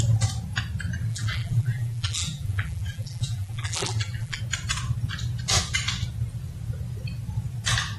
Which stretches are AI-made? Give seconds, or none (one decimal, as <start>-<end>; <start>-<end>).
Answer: 1.1-4.4